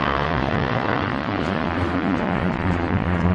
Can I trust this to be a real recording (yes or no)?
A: no